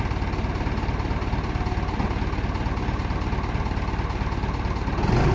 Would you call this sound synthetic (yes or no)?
no